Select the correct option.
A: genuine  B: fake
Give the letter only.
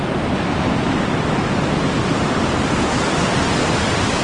A